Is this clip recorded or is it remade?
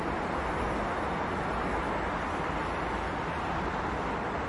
recorded